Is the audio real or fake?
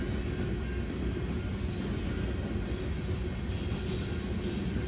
real